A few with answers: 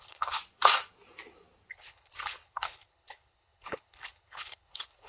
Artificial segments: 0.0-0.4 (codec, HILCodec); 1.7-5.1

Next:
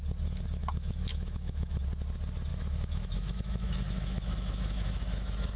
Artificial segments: 0.6-1.8 (autoencoder, DAC-VAE); 2.5-5.6